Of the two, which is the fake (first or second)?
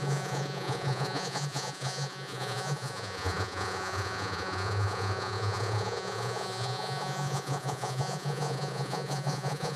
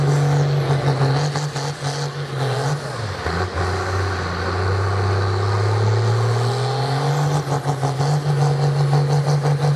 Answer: first